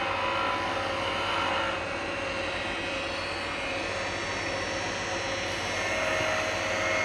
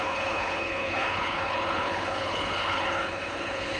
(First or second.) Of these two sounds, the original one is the first